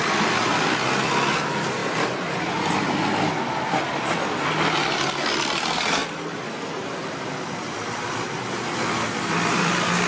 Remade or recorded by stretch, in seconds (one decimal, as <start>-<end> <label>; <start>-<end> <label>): 0.0-1.8 recorded; 1.8-4.0 remade; 4.0-6.0 recorded; 6.0-7.2 remade; 7.2-10.1 recorded